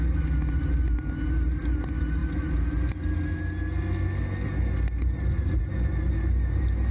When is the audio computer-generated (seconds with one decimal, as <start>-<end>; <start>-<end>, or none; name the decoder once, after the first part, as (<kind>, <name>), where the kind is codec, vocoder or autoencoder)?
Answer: none